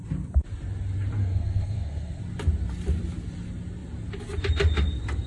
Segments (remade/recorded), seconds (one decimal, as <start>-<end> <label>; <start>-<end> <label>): 0.0-1.2 recorded; 1.2-2.2 remade; 2.2-5.3 recorded